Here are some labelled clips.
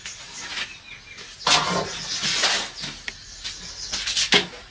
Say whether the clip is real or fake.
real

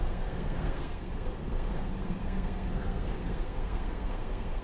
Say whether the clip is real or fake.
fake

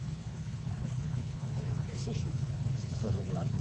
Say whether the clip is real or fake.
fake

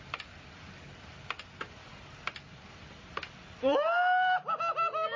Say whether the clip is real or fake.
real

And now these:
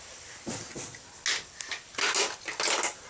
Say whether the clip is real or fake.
real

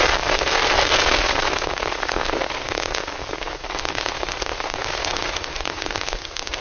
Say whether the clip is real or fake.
fake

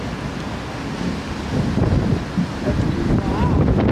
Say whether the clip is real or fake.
real